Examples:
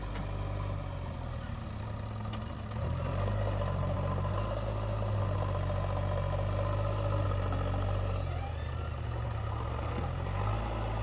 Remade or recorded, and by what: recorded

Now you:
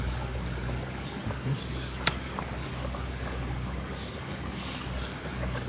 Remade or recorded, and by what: remade, codec, DAC